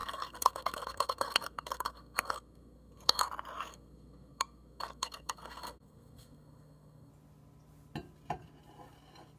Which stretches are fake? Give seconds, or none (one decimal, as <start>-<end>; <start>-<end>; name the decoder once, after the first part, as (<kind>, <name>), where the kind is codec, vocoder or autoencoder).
0.0-3.3 (codec, SNAC); 3.7-7.1